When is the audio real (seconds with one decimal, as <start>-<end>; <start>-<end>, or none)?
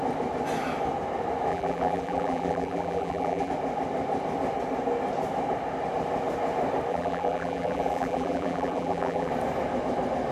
0.0-1.5; 3.5-6.9; 9.3-10.3